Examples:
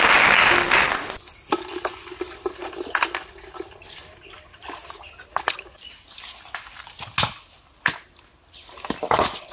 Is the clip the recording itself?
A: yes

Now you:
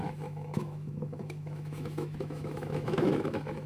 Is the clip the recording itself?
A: no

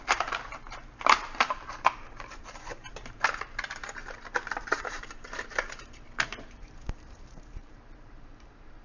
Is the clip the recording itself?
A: no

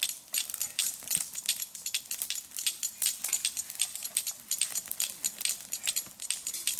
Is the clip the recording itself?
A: yes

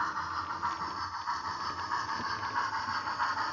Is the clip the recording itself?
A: yes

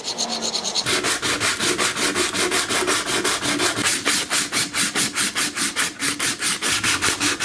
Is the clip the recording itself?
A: yes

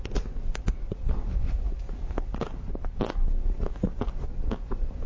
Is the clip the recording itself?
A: yes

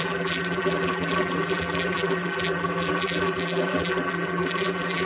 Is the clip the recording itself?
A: no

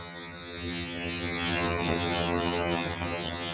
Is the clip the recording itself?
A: no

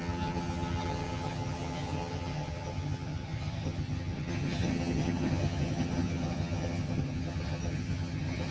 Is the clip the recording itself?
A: no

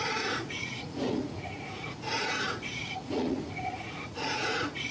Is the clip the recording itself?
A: no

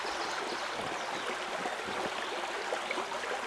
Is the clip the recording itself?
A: yes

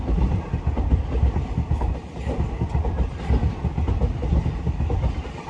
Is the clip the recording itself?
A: yes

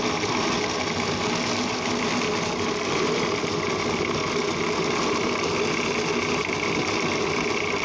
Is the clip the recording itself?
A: yes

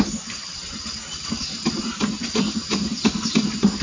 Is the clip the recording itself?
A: yes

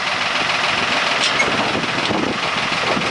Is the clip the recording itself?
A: yes